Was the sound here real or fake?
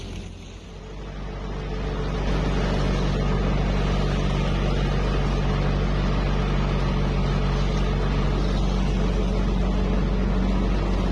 real